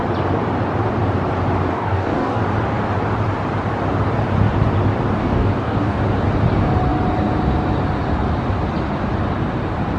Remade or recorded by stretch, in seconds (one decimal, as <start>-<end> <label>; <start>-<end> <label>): 0.0-1.7 recorded; 1.7-2.4 remade; 2.4-5.2 recorded; 5.2-6.0 remade; 6.0-10.0 recorded

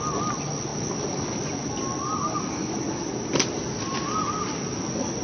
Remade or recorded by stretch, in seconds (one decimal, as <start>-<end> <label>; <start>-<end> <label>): 0.0-5.2 recorded

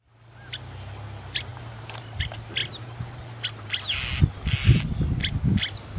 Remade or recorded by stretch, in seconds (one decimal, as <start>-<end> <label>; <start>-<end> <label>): 0.0-6.0 recorded

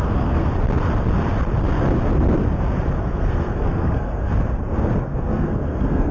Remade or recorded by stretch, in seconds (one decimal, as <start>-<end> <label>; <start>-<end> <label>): 0.0-0.5 remade; 0.5-3.0 recorded; 3.0-4.3 remade; 4.3-5.0 recorded; 5.0-6.1 remade

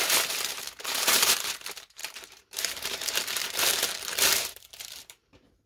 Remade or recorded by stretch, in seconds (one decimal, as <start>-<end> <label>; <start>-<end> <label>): 0.0-3.7 remade; 3.7-4.4 recorded; 4.4-5.7 remade